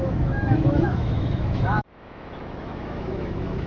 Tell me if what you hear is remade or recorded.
remade